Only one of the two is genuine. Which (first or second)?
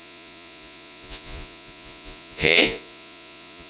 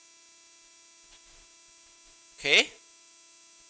second